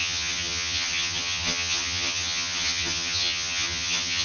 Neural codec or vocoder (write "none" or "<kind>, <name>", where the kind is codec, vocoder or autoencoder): vocoder, HiFi-GAN